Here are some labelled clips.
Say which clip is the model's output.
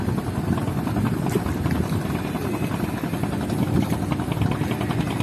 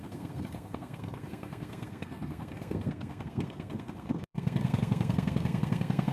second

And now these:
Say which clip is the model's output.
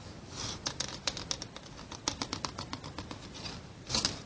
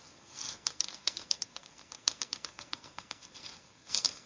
second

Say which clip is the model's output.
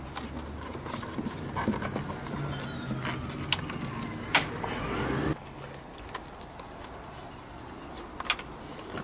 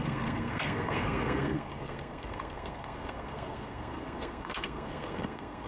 second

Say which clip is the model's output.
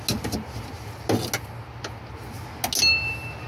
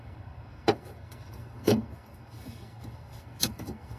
second